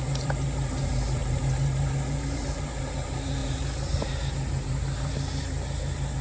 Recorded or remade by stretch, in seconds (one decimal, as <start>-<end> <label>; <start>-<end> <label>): 0.0-6.2 remade